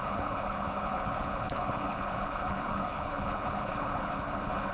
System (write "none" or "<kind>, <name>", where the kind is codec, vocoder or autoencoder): codec, HILCodec